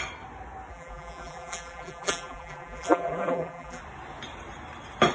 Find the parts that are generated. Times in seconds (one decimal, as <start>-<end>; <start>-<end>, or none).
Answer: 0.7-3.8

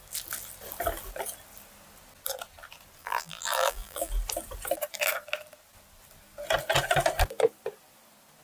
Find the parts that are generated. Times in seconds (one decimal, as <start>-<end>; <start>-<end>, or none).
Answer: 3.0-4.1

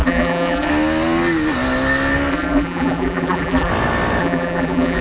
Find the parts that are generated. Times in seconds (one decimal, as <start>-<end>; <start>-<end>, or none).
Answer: 0.0-0.7; 2.3-3.7; 4.2-5.0

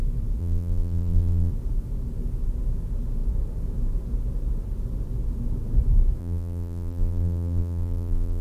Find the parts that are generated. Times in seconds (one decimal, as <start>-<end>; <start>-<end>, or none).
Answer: 0.4-1.5; 6.2-8.4

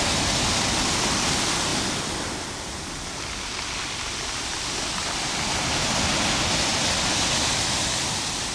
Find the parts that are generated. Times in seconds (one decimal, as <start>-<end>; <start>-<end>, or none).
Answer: none

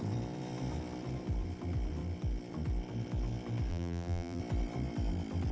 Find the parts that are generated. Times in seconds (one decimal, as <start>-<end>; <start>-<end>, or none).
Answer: 3.7-4.4